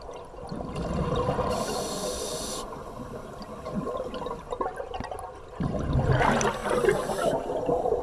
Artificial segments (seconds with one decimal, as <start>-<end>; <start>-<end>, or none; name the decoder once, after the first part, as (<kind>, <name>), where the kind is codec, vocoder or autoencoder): 6.6-8.0 (vocoder, BigVGAN v2)